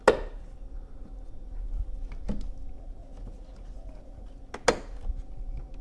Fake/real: real